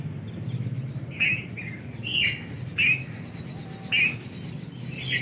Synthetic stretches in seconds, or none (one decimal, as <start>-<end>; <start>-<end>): none